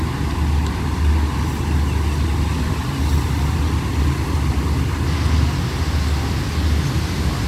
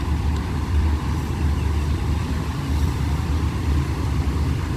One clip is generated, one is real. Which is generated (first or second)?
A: second